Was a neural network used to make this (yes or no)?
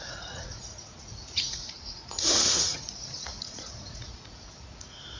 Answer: yes